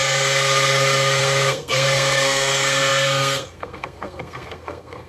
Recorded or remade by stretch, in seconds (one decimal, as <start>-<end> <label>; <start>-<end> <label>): 0.0-5.1 remade